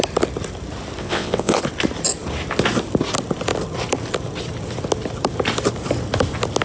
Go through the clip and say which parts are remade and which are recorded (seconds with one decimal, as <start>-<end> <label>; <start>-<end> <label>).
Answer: 0.0-1.0 recorded; 1.0-1.6 remade; 1.6-6.6 recorded